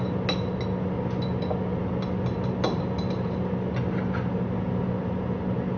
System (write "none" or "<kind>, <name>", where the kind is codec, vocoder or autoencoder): none